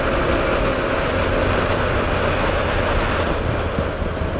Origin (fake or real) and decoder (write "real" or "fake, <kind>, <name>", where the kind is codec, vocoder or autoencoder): real